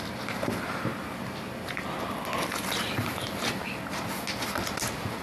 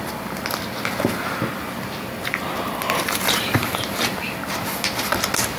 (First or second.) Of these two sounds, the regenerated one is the second